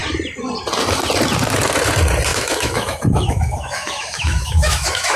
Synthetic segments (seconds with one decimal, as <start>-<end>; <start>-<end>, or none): 2.3-5.2